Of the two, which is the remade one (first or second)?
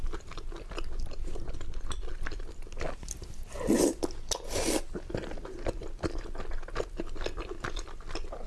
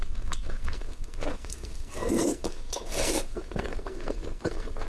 second